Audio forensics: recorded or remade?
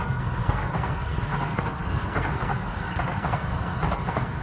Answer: remade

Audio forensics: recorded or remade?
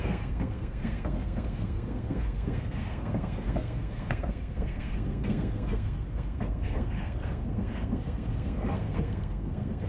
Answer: remade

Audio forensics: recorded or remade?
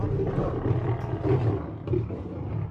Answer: recorded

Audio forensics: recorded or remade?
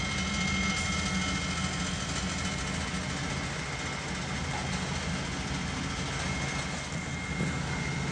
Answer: recorded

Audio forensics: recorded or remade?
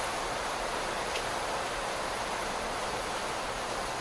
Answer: recorded